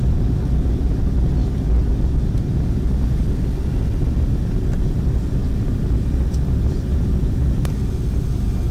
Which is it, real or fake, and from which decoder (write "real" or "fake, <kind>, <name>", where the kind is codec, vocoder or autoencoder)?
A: real